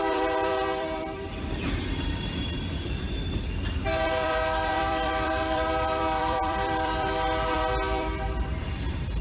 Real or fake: fake